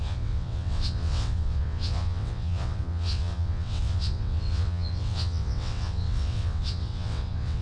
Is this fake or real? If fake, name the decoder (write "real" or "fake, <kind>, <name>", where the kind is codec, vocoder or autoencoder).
fake, vocoder, WaveNeXt